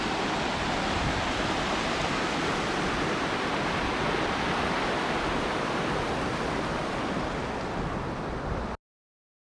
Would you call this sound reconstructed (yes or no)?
no